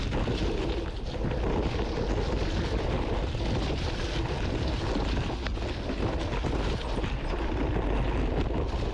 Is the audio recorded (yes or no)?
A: yes